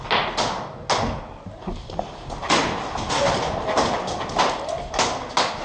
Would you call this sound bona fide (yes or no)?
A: yes